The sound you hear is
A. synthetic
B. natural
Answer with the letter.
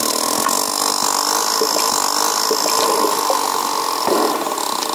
B